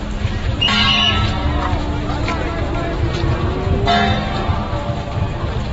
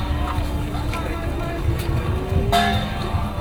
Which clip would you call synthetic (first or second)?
second